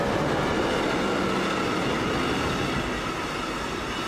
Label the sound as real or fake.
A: real